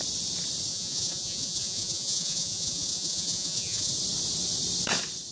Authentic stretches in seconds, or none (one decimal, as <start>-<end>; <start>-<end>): 0.0-0.7; 3.9-5.3